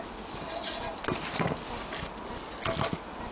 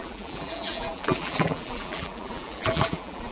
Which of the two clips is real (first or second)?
first